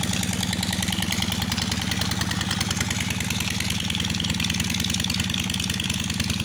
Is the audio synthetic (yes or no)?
no